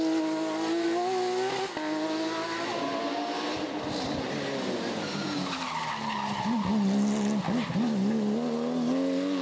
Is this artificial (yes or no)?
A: no